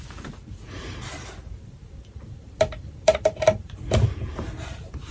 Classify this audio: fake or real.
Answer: fake